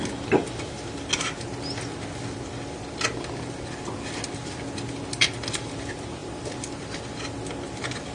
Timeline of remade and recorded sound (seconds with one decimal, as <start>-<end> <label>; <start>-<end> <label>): 0.0-8.1 recorded